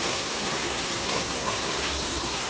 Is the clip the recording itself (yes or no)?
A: no